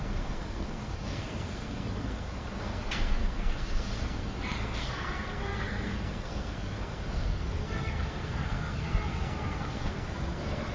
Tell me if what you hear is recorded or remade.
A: remade